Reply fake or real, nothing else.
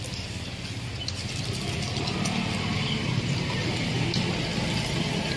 real